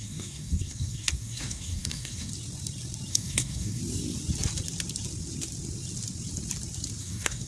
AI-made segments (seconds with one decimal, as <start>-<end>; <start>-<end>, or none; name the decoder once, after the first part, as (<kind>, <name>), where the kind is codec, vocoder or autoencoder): 0.0-2.3 (codec, SNAC); 3.1-3.8; 7.0-7.5